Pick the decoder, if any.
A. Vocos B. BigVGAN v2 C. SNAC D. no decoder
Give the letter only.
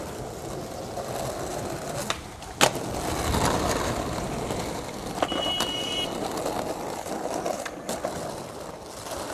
D